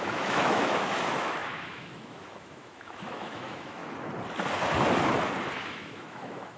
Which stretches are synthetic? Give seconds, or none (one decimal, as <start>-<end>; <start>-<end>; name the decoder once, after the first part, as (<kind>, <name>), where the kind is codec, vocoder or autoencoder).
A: 0.0-3.8 (autoencoder, DAC-VAE); 5.6-6.6